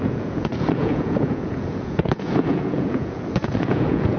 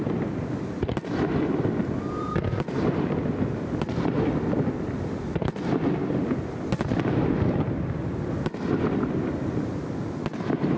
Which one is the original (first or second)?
second